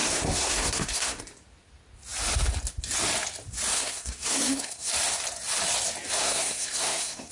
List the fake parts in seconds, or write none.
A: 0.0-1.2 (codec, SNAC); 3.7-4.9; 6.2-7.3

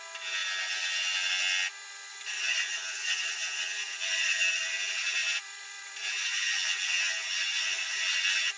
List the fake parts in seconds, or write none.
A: 2.1-4.6 (vocoder, BigVGAN v2); 5.2-6.1

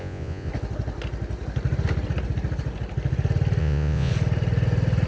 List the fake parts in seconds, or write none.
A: 0.0-0.5 (vocoder, Vocos); 3.6-4.1

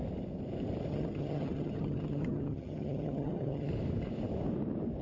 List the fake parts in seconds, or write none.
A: 0.9-3.7 (vocoder, HiFi-GAN)

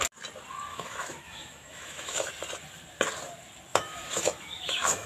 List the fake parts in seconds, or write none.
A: 0.7-2.3 (autoencoder, DAC-VAE); 3.7-5.1

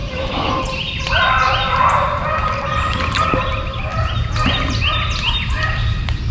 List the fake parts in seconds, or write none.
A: 0.0-1.0 (vocoder, BigVGAN v2); 2.4-3.4; 3.9-4.5

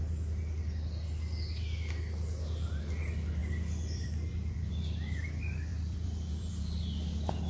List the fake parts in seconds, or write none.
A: 3.4-4.7 (vocoder, BigVGAN v2); 5.7-6.5

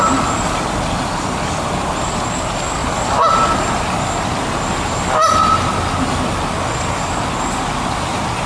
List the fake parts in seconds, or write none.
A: none